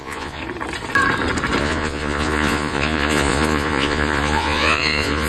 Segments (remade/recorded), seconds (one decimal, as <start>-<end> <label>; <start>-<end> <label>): 0.0-0.4 remade; 0.4-1.6 recorded; 1.6-5.3 remade